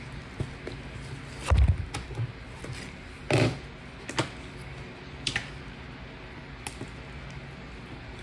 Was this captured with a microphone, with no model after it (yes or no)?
yes